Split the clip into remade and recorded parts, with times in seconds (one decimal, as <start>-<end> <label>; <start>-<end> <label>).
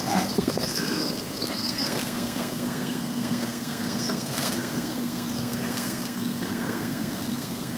0.0-7.8 remade